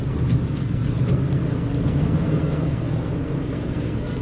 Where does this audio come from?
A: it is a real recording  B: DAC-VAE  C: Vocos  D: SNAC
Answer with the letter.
D